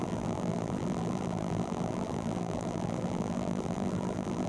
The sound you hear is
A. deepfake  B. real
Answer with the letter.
A